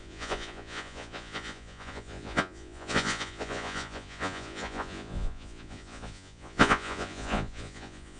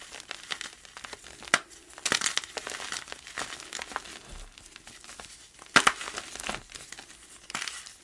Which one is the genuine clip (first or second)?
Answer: second